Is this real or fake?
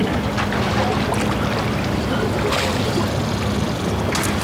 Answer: real